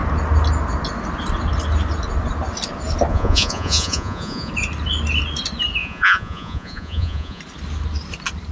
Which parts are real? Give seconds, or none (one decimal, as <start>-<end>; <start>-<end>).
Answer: 0.0-3.1; 4.5-5.8; 7.4-8.5